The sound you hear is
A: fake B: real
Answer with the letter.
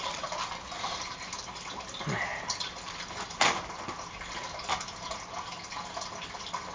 B